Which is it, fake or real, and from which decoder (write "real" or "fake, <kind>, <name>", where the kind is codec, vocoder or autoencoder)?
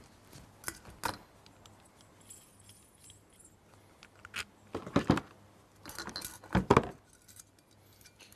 real